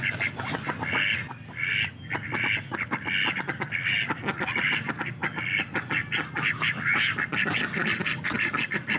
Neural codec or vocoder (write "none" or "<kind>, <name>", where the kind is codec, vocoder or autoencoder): none